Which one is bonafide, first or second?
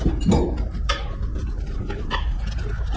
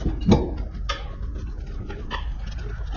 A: second